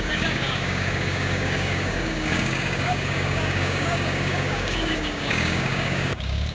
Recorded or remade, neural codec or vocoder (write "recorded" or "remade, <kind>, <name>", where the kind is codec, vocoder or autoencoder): remade, codec, DAC